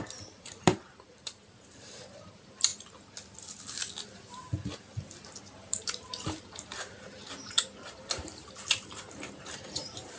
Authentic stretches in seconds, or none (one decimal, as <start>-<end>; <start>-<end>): 2.7-5.4